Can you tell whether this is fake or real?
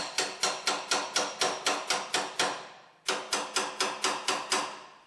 real